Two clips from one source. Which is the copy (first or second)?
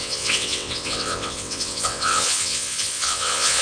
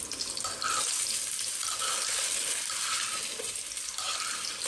first